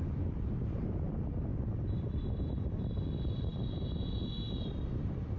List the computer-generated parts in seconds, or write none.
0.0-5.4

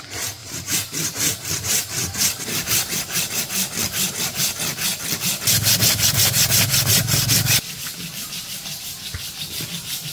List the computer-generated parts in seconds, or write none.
0.4-3.3

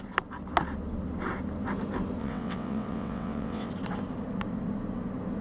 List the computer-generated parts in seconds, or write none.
2.2-3.7

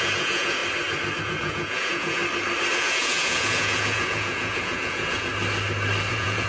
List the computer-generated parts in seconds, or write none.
0.0-0.6; 1.2-2.2; 2.7-5.3; 6.1-6.5

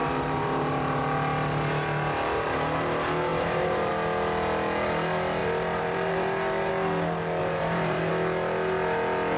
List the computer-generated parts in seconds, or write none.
0.0-1.0; 3.3-3.9; 5.4-6.7; 7.4-8.1